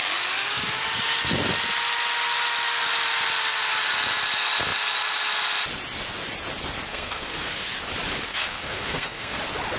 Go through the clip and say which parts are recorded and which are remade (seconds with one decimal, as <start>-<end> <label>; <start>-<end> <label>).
0.0-6.9 recorded; 6.9-7.6 remade; 7.6-8.3 recorded; 8.3-9.4 remade; 9.4-9.8 recorded